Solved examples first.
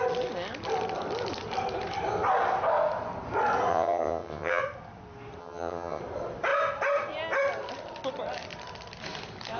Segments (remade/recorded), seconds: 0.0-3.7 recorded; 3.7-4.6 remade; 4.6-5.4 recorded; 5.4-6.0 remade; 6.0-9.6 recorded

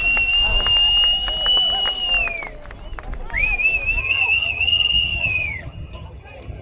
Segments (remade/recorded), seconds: 0.0-4.0 recorded; 4.0-6.6 remade

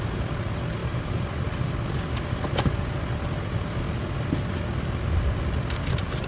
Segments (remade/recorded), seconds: 0.0-6.3 recorded

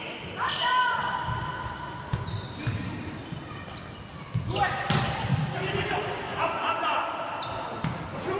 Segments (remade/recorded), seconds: 0.0-8.4 recorded

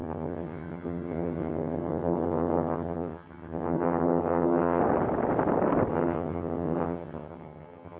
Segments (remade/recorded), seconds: 0.0-4.8 remade; 4.8-5.9 recorded; 5.9-8.0 remade